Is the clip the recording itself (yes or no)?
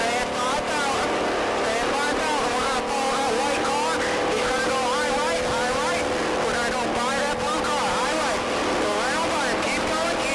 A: yes